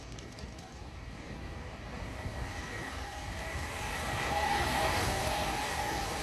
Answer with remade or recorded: remade